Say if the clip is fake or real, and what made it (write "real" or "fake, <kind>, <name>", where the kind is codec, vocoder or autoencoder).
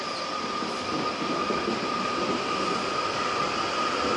real